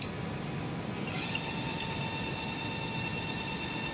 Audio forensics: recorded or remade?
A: recorded